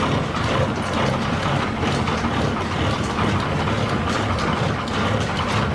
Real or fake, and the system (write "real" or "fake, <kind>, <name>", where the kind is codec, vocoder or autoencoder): real